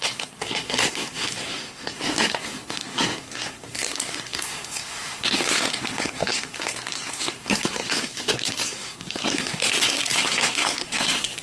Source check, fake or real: fake